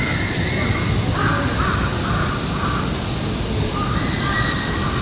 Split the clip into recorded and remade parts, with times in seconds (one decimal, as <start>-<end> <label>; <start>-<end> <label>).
0.0-5.0 recorded